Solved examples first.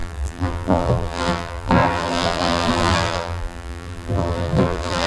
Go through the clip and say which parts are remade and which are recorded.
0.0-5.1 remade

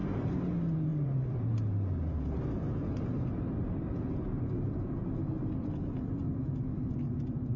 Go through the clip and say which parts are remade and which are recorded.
0.0-0.5 remade; 0.5-0.9 recorded; 0.9-5.1 remade; 5.1-7.6 recorded

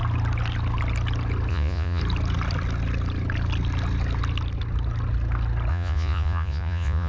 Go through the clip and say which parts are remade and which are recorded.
0.0-1.5 recorded; 1.5-2.0 remade; 2.0-5.7 recorded; 5.7-7.1 remade

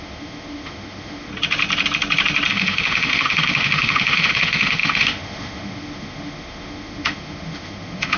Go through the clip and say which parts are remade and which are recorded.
0.0-1.3 remade; 1.3-2.5 recorded; 2.5-8.2 remade

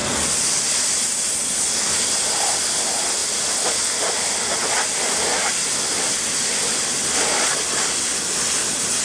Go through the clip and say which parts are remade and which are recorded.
0.0-9.0 recorded